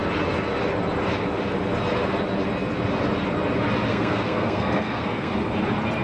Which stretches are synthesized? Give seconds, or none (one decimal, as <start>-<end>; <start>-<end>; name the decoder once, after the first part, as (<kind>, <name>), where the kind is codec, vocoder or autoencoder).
3.9-5.3 (codec, SNAC)